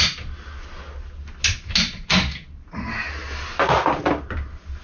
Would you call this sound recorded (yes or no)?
yes